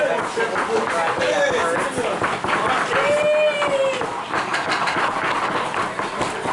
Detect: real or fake real